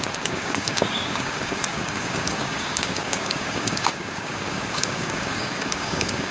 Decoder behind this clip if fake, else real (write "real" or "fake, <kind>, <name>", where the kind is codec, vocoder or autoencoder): fake, codec, DAC